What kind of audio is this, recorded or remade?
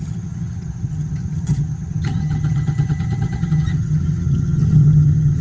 remade